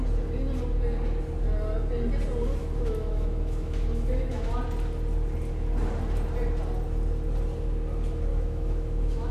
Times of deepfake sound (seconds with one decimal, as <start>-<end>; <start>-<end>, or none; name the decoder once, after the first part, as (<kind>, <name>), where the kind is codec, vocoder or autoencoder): 2.6-4.5 (autoencoder, DAC-VAE); 8.3-9.3